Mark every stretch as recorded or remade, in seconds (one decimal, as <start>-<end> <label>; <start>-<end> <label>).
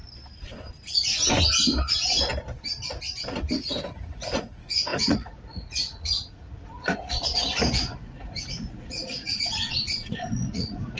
0.0-3.9 recorded; 3.9-7.0 remade; 7.0-7.8 recorded; 7.8-11.0 remade